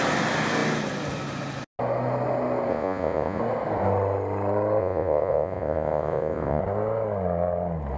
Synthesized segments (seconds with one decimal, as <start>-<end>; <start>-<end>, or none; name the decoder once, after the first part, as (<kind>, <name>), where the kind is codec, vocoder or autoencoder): 2.7-3.4 (vocoder, Vocos); 4.8-6.6